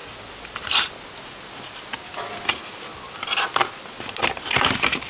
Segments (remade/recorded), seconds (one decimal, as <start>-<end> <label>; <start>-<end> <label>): 0.0-5.1 recorded

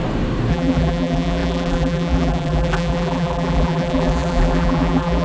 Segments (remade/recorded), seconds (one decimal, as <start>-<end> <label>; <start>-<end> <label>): 0.0-0.5 recorded; 0.5-5.2 remade

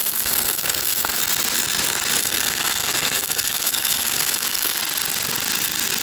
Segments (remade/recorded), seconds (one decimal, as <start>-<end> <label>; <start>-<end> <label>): 0.0-1.2 remade; 1.2-2.2 recorded; 2.2-4.8 remade; 4.8-6.0 recorded

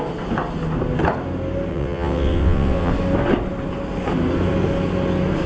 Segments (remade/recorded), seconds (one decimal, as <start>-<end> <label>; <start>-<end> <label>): 0.0-1.7 recorded; 1.7-2.9 remade; 2.9-5.5 recorded

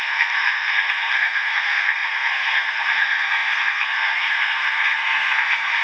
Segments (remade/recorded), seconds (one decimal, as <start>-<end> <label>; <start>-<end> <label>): 0.0-5.8 remade

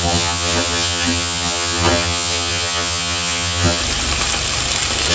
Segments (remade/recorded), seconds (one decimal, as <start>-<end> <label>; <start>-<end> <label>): 0.0-3.8 remade; 3.8-5.1 recorded

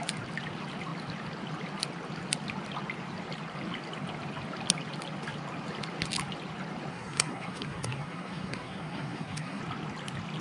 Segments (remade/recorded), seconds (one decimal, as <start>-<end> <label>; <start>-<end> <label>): 0.0-6.9 recorded; 6.9-9.6 remade; 9.6-10.4 recorded

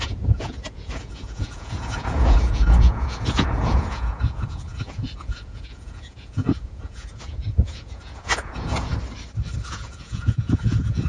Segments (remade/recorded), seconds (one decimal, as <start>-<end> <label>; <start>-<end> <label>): 0.0-8.9 remade; 8.9-9.7 recorded; 9.7-11.1 remade